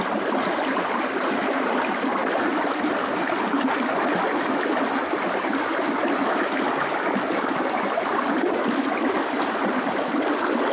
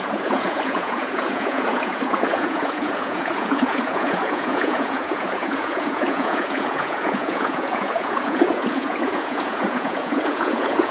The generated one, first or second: second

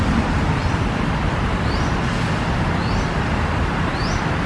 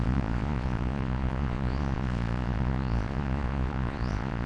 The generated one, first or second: second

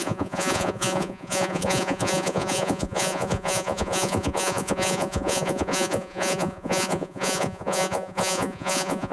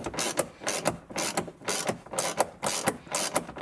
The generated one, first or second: first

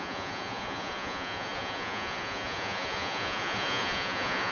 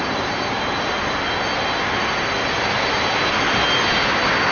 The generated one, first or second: first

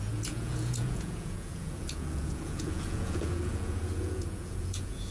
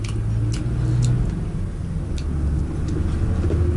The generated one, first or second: first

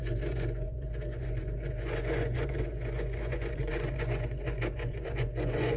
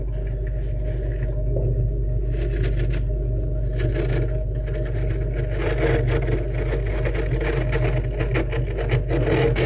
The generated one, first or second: first